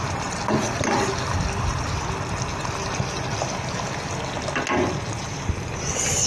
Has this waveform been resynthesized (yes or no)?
no